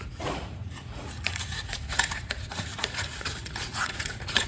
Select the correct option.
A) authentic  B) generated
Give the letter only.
B